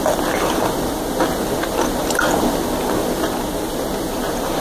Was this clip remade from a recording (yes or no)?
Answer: no